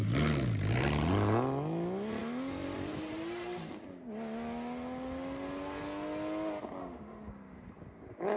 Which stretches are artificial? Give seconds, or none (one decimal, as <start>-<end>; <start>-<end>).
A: 6.8-7.3